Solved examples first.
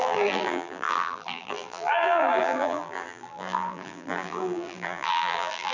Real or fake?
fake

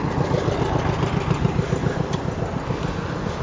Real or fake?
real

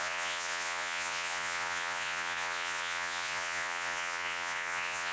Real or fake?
fake